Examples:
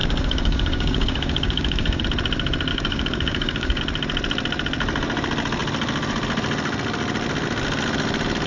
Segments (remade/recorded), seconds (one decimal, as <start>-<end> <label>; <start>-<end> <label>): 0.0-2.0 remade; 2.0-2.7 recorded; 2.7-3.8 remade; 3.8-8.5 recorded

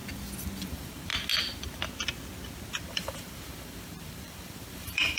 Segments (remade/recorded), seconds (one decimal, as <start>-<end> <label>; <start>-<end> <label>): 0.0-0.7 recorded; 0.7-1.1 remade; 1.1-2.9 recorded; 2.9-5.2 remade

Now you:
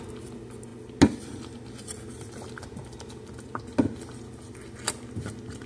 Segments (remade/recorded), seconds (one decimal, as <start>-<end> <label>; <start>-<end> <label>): 0.0-5.7 recorded

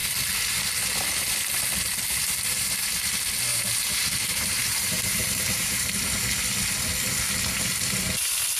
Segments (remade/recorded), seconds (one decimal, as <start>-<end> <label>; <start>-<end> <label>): 0.0-3.5 recorded; 3.5-6.1 remade; 6.1-8.6 recorded

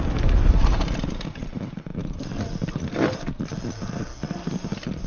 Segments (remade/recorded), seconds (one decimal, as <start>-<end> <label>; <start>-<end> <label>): 0.0-5.1 recorded

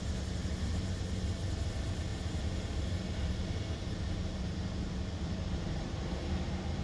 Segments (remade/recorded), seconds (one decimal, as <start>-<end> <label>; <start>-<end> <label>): 0.0-6.8 recorded